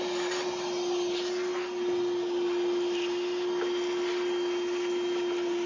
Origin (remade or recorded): recorded